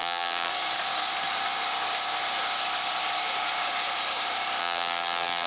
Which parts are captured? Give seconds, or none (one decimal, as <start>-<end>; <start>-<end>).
0.5-4.6